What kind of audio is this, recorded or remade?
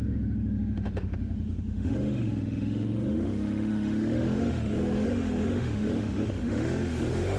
remade